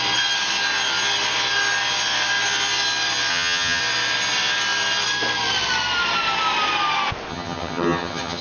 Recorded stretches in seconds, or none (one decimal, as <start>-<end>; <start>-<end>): 0.0-3.3; 3.8-7.3